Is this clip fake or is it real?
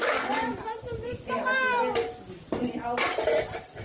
real